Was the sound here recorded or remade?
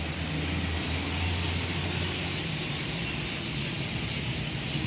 recorded